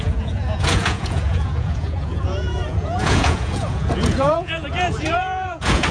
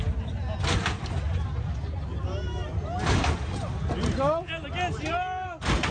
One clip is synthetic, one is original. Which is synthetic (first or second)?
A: first